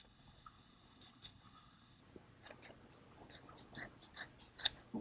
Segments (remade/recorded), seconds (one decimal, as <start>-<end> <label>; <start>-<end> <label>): 0.0-2.0 remade; 2.0-5.0 recorded